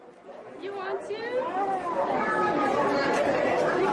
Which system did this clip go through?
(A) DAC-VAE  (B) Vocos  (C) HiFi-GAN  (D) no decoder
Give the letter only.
D